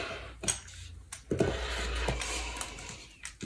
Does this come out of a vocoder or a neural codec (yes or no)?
no